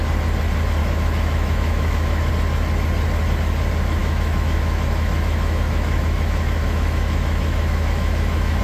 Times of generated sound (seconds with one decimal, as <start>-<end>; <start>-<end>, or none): 0.8-2.3; 4.0-8.6